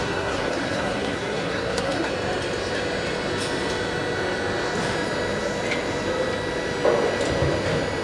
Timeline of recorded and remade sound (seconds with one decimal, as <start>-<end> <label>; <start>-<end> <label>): 0.0-2.1 remade; 2.1-8.0 recorded